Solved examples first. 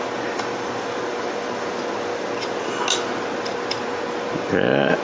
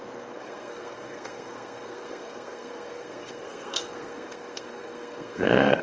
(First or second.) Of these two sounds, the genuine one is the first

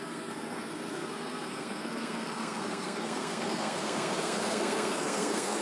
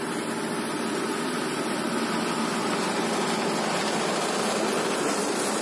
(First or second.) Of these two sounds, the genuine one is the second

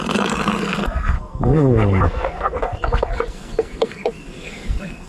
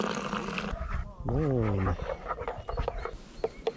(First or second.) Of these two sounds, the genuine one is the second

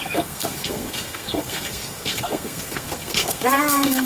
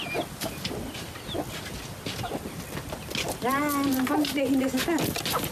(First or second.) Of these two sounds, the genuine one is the second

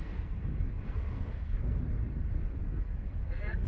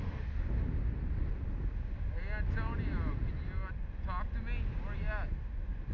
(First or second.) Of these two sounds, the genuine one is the second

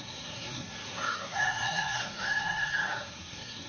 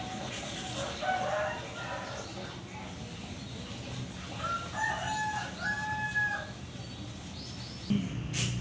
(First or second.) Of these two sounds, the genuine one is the second